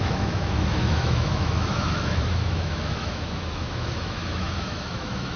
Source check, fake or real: fake